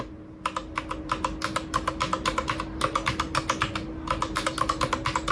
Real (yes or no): yes